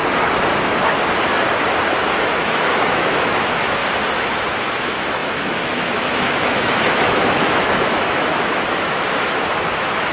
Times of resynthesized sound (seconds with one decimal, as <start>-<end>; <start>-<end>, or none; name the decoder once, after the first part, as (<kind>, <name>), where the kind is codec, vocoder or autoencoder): 2.2-3.8 (autoencoder, DAC-VAE); 4.5-10.1